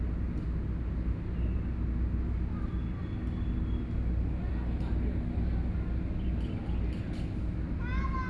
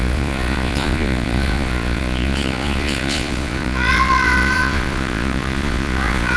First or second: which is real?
first